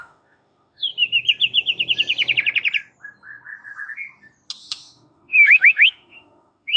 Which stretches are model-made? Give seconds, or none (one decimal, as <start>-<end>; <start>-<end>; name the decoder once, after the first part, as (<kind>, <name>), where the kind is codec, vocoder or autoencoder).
0.0-0.9 (autoencoder, DAC-VAE); 4.6-6.8